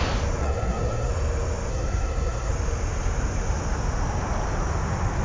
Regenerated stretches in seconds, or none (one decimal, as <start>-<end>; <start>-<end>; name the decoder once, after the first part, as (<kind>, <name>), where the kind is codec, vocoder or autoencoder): 0.4-1.1 (codec, SNAC); 1.7-2.5